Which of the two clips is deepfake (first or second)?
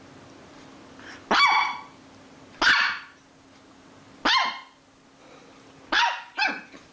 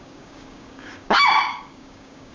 second